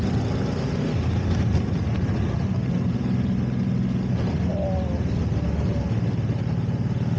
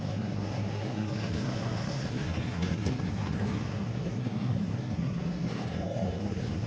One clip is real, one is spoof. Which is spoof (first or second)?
second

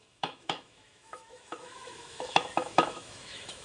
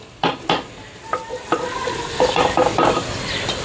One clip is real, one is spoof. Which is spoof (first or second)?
first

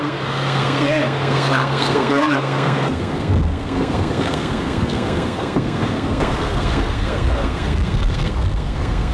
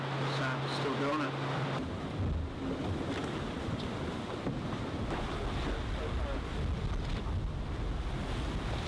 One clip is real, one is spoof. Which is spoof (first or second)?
first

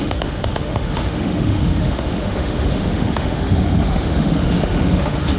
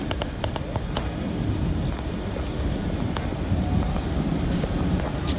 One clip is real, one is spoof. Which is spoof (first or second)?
first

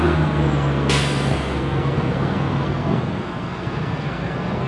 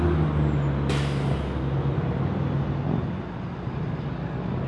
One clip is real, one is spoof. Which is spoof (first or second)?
first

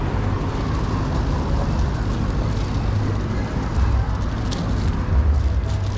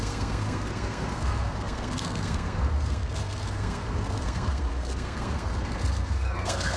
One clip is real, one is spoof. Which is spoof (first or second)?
second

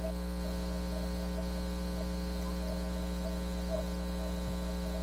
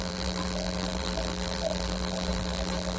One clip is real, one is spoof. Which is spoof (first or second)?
second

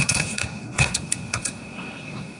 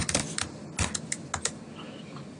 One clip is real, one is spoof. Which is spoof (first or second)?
first